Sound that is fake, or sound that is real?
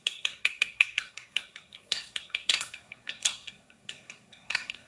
fake